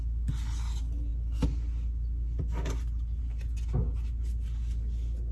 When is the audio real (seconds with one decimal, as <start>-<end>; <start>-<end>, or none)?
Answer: 0.0-5.3